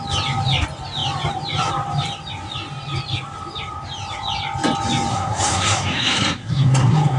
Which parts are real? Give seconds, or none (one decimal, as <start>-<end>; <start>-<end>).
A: 0.0-5.1

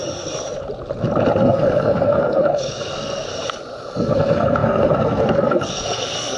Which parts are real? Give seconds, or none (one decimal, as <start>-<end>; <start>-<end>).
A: 0.0-1.4; 3.3-3.9

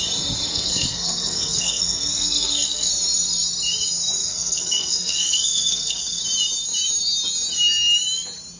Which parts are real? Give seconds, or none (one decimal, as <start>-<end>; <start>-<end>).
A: 0.0-0.5; 2.9-4.2; 6.2-8.6

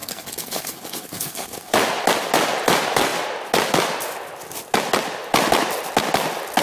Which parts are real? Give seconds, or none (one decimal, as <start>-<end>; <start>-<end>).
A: 1.7-6.6

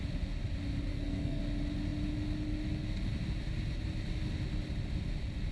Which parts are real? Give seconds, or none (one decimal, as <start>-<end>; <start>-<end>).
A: 0.0-0.9; 1.4-5.5

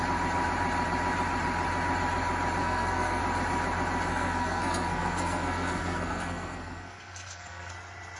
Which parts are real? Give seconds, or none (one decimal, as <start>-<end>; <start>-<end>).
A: 0.0-2.6; 3.2-4.1; 7.7-8.2

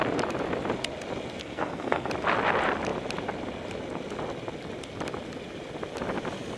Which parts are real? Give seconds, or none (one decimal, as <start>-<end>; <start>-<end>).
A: 0.0-1.4; 2.1-6.6

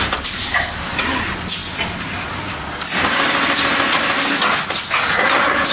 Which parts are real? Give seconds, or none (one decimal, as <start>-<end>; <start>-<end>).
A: 0.0-5.7